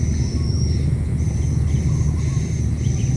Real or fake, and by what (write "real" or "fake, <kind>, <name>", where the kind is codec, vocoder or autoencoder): real